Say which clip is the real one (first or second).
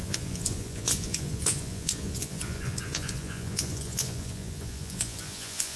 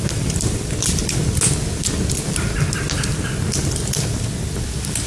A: second